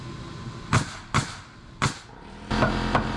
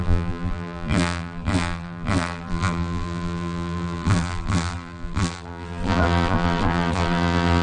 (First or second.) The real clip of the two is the first